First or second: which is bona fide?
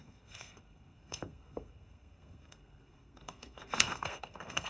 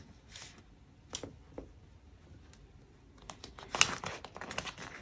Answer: second